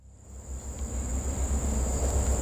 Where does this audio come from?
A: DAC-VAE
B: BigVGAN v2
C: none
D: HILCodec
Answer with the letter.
C